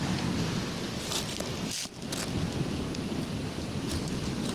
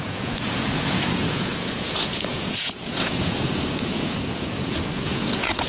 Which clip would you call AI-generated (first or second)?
second